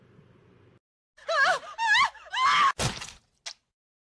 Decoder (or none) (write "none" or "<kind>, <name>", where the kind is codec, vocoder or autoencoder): none